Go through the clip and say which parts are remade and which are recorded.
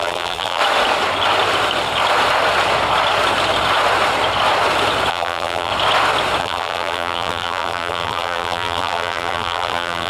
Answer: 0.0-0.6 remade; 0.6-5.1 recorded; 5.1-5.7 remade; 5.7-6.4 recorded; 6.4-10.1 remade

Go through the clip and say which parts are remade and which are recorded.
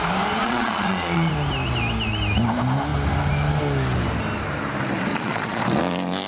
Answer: 0.0-0.4 recorded; 0.4-1.3 remade; 1.3-5.1 recorded; 5.1-5.6 remade; 5.6-6.3 recorded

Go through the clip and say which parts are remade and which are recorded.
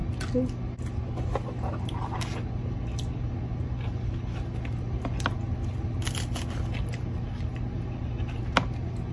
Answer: 0.0-9.1 recorded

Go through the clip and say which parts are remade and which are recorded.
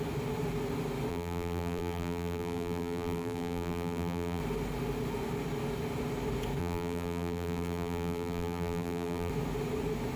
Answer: 0.0-1.1 recorded; 1.1-4.4 remade; 4.4-6.6 recorded; 6.6-9.3 remade; 9.3-10.2 recorded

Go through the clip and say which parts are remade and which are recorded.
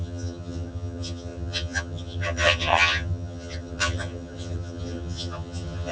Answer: 0.0-5.9 remade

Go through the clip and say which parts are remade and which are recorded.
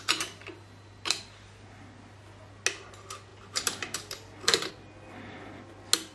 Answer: 0.0-0.4 recorded; 0.4-1.2 remade; 1.2-3.3 recorded; 3.3-4.7 remade; 4.7-6.1 recorded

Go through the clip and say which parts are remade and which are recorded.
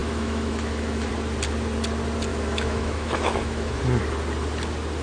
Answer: 0.0-1.1 remade; 1.1-2.3 recorded; 2.3-3.8 remade; 3.8-5.0 recorded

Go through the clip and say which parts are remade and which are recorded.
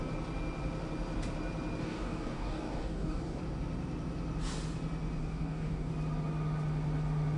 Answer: 0.0-1.8 recorded; 1.8-3.4 remade; 3.4-5.2 recorded; 5.2-5.9 remade; 5.9-7.4 recorded